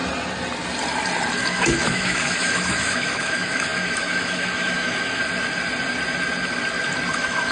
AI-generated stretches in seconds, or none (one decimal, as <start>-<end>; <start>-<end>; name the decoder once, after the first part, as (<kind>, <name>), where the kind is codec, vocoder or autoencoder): 1.4-5.2 (autoencoder, DAC-VAE); 7.1-7.5